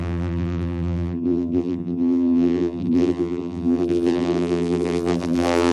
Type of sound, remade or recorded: remade